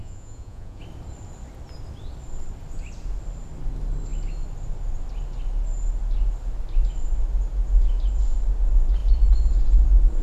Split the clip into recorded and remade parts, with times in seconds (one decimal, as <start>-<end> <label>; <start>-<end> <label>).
0.0-0.8 remade; 0.8-10.2 recorded

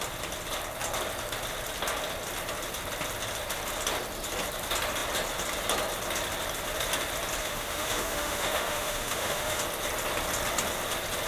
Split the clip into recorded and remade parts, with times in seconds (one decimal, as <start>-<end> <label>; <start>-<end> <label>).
0.0-7.4 recorded; 7.4-9.6 remade; 9.6-11.3 recorded

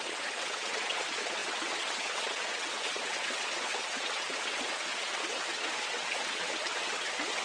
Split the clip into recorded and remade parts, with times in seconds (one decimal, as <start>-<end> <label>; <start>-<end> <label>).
0.0-7.4 remade

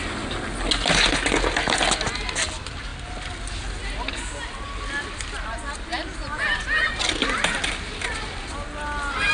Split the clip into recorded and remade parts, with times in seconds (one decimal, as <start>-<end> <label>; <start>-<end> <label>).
0.0-9.3 recorded

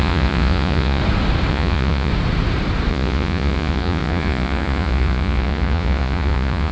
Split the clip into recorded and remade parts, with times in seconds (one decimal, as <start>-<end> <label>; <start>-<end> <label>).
0.0-1.0 remade; 1.0-1.5 recorded; 1.5-2.1 remade; 2.1-2.9 recorded; 2.9-6.7 remade

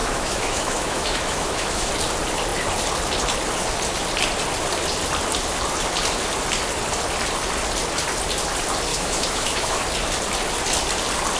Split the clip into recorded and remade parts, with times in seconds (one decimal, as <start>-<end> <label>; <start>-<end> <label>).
0.0-1.9 remade; 1.9-8.9 recorded; 8.9-9.8 remade; 9.8-11.4 recorded